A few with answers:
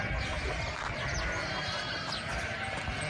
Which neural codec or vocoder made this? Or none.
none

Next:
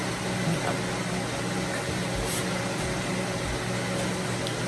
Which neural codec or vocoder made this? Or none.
none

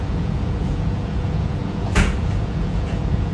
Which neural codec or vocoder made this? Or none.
vocoder, Vocos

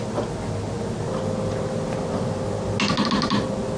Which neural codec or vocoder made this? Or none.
none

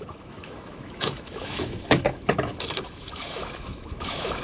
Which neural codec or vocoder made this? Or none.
autoencoder, DAC-VAE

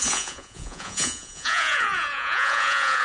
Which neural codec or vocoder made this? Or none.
vocoder, Vocos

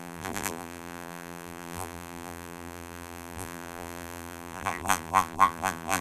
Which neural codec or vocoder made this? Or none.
vocoder, BigVGAN v2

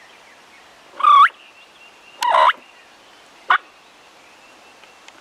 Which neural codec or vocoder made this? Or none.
none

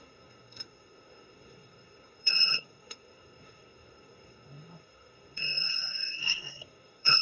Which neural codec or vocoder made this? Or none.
codec, SNAC